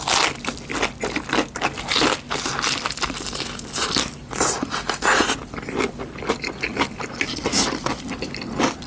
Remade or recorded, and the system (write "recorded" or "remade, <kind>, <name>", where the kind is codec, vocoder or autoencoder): recorded